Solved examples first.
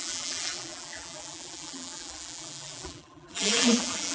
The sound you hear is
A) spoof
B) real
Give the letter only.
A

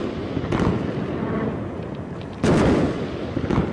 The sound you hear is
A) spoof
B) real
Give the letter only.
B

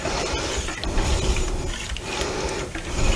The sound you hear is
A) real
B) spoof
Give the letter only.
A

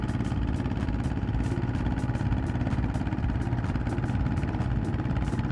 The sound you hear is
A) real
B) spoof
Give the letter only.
A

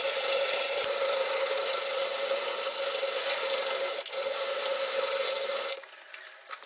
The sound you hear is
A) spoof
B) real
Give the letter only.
B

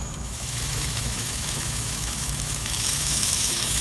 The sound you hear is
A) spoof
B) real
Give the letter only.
A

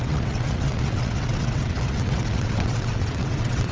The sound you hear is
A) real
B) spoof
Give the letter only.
B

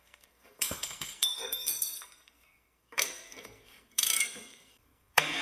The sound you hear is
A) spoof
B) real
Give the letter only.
A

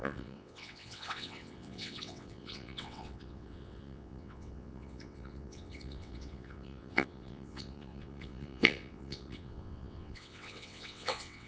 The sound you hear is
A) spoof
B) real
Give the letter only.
A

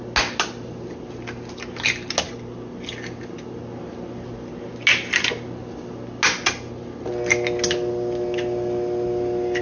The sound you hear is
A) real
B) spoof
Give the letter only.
A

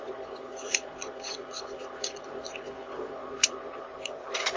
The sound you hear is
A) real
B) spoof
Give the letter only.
B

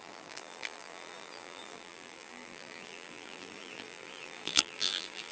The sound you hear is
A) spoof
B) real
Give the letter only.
A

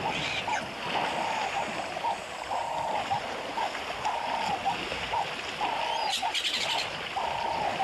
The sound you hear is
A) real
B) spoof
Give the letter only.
A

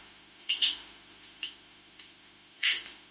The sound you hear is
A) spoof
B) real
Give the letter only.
A